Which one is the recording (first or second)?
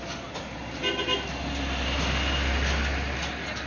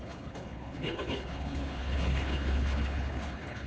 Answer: first